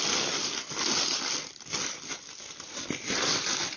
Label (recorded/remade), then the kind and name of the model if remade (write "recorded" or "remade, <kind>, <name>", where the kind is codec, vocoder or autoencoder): remade, vocoder, BigVGAN v2